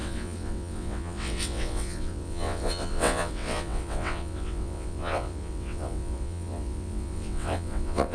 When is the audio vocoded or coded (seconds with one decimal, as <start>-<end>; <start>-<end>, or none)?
0.0-8.1